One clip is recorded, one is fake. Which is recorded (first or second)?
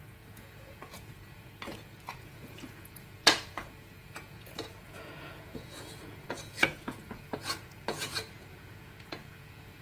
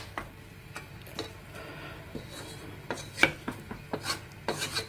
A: second